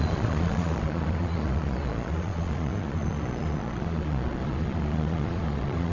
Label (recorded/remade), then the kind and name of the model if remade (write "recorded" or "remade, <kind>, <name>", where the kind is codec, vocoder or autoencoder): remade, vocoder, Vocos